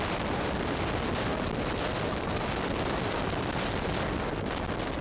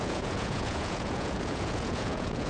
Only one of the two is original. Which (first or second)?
first